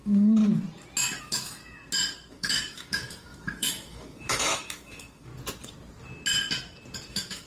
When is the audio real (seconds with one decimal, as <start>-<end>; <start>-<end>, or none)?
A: 0.4-1.2; 1.6-2.3; 5.3-7.1